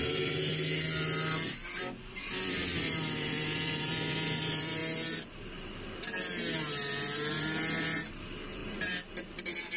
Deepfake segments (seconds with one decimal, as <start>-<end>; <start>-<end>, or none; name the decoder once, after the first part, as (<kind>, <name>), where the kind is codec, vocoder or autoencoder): 0.0-0.5 (vocoder, BigVGAN v2); 1.8-4.8; 8.1-8.6; 9.4-9.8